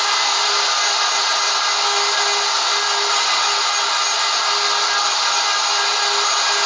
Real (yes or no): yes